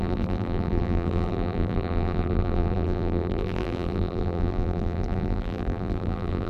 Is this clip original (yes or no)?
no